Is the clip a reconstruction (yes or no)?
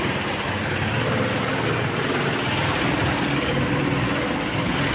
no